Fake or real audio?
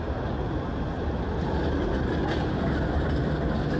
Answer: real